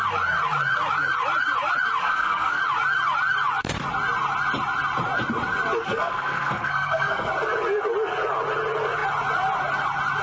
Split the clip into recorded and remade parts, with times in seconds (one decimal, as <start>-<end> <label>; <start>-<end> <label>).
0.0-2.0 recorded; 2.0-2.6 remade; 2.6-5.8 recorded; 5.8-7.3 remade; 7.3-10.2 recorded